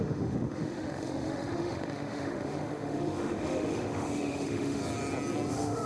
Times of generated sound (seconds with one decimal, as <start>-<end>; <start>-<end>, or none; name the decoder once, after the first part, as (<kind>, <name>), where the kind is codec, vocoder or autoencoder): 0.0-4.8 (autoencoder, DAC-VAE); 5.5-5.9